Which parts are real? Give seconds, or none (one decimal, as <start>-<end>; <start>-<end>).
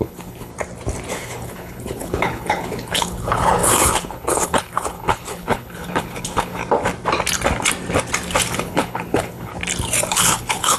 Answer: 0.5-1.1; 6.6-8.6; 9.5-10.1